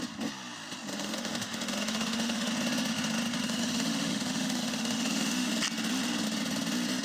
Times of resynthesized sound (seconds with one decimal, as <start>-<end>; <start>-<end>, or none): 0.9-2.5; 3.4-5.5